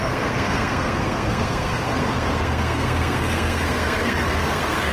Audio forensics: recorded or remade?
remade